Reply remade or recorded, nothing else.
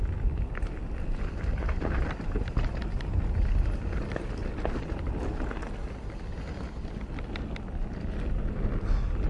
recorded